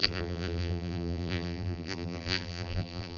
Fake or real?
fake